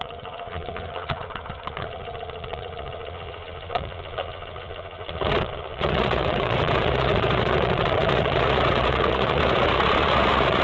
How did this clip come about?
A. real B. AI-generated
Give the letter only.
B